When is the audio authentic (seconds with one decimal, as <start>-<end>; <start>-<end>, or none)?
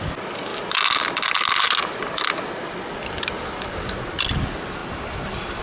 0.0-5.6